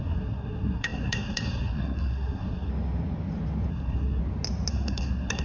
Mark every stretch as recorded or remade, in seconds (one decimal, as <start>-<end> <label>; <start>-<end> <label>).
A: 0.0-2.7 remade; 2.7-3.7 recorded; 3.7-4.2 remade; 4.2-4.7 recorded; 4.7-5.4 remade